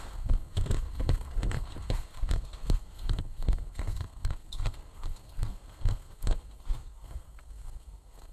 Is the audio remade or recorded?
remade